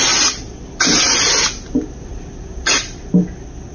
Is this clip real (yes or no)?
yes